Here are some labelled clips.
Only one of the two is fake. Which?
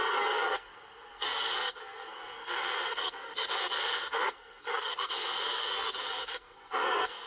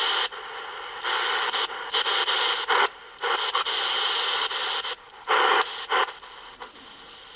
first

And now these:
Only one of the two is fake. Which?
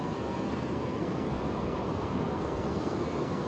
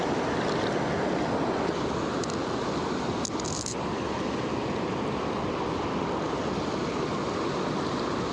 first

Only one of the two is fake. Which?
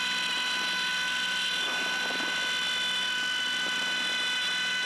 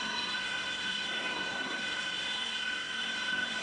second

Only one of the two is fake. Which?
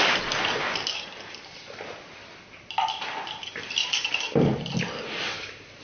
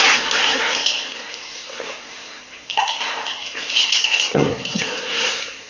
second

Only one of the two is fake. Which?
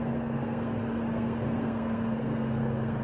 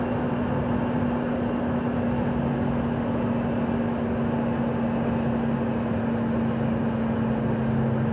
first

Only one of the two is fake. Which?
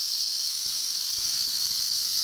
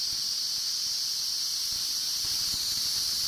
first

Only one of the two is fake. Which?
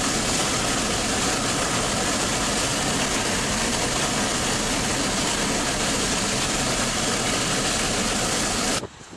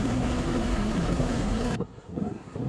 second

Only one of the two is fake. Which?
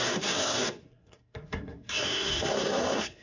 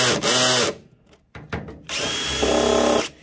first